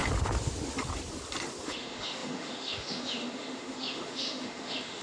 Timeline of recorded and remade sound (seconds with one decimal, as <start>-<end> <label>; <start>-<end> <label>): 0.0-1.6 recorded; 1.6-5.0 remade